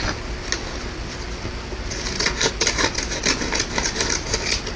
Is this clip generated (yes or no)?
no